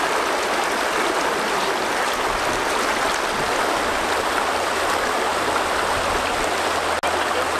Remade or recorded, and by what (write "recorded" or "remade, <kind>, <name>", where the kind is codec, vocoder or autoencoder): recorded